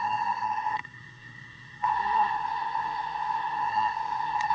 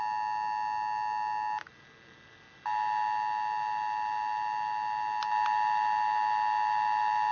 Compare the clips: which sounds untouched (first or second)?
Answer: second